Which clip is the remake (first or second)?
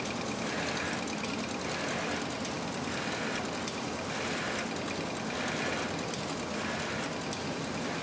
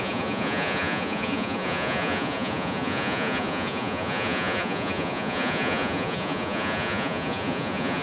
second